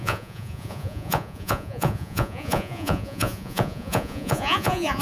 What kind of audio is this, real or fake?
fake